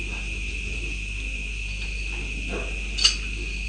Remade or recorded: recorded